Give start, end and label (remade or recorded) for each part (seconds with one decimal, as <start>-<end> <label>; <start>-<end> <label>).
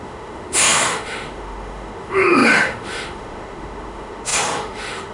0.0-5.1 remade